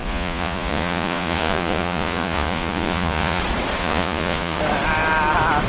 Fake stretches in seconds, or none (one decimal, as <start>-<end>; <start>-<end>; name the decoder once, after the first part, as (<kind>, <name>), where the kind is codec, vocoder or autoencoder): 0.0-3.4 (vocoder, Vocos); 3.8-4.6